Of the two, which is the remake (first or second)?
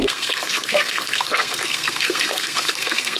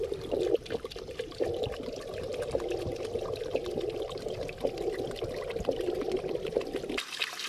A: first